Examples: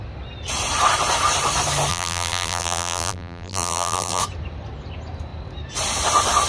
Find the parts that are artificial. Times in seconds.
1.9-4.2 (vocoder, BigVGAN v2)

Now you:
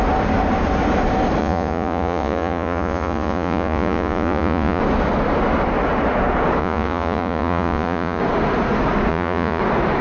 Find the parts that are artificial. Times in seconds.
1.4-4.8 (vocoder, Vocos); 6.6-8.2; 9.1-9.6

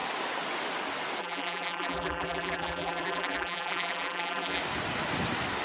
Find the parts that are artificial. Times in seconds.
1.2-4.6 (vocoder, BigVGAN v2)

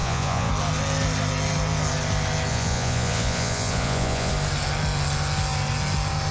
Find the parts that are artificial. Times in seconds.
0.0-0.5 (vocoder, Vocos); 2.5-4.3

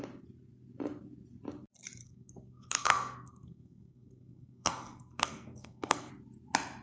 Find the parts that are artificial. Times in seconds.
2.0-6.1 (codec, SNAC)

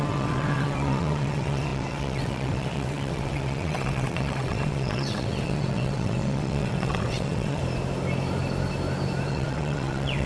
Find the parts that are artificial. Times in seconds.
0.0-7.6 (vocoder, WaveNeXt); 9.3-10.3

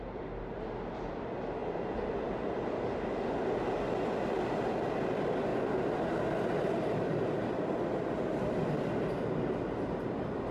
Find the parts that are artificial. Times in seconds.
none